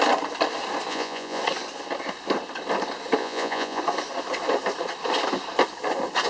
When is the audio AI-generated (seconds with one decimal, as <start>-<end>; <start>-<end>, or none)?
0.9-1.4; 3.2-3.8